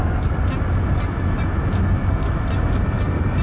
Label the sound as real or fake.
real